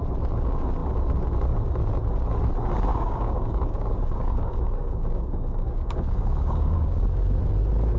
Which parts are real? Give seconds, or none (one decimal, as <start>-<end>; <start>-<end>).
0.0-2.9; 7.4-8.0